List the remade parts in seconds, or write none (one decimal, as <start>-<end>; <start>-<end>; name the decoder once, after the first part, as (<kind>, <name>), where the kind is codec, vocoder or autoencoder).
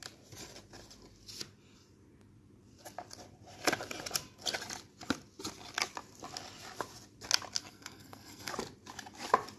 7.6-8.5 (codec, SNAC)